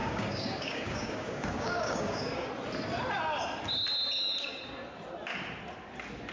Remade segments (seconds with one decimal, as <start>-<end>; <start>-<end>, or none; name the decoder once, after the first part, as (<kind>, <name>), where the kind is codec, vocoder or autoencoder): 0.0-2.5 (codec, DAC)